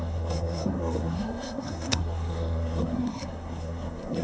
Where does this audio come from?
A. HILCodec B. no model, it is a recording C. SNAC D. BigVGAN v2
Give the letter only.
C